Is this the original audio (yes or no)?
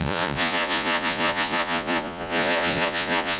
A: no